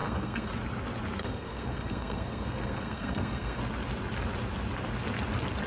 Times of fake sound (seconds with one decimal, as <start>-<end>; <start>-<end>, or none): 0.0-0.5; 1.2-3.6